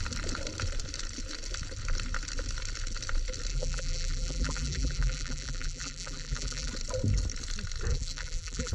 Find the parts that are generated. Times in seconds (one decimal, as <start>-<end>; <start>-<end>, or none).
3.5-6.7; 7.9-8.7